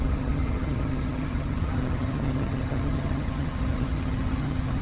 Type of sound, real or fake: fake